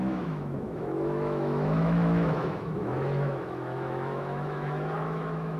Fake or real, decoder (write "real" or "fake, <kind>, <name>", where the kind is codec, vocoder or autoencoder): fake, autoencoder, DAC-VAE